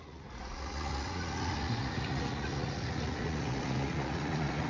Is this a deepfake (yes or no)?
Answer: yes